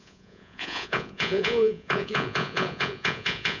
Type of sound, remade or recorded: remade